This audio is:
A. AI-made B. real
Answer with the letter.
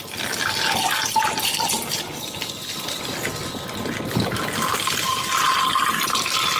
B